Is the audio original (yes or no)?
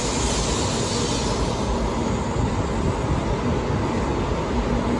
yes